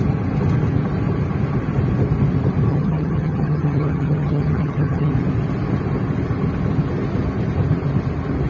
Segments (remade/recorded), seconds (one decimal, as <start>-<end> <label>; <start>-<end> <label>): 0.0-2.7 recorded; 2.7-5.1 remade; 5.1-8.5 recorded